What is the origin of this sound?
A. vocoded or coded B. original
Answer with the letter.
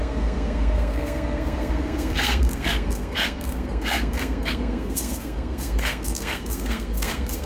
A